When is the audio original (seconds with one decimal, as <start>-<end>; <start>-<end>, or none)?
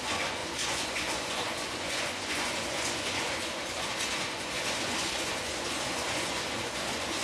none